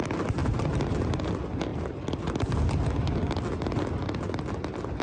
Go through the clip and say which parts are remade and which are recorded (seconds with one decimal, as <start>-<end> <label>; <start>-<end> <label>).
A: 0.0-0.4 recorded; 0.4-1.1 remade; 1.1-5.0 recorded